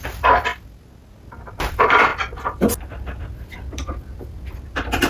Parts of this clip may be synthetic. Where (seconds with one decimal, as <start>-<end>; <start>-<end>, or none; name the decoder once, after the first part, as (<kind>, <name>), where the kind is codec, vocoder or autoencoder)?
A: 0.0-0.5 (vocoder, BigVGAN v2); 1.7-5.1